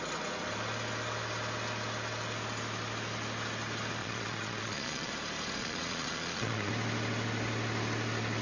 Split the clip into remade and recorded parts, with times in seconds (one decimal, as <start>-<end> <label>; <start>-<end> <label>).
0.0-4.0 recorded; 4.0-5.1 remade; 5.1-5.6 recorded; 5.6-6.7 remade; 6.7-8.4 recorded